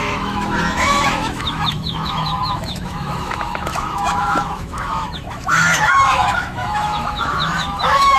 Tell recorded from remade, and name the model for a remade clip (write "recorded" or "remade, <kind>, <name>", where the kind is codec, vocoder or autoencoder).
remade, autoencoder, DAC-VAE